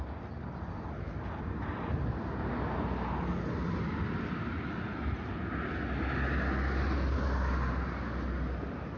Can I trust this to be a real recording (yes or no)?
yes